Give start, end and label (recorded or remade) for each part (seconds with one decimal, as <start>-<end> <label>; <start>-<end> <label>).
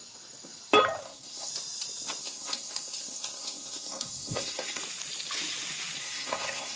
0.0-1.0 recorded; 1.0-1.5 remade; 1.5-2.2 recorded; 2.2-4.8 remade; 4.8-6.0 recorded; 6.0-6.8 remade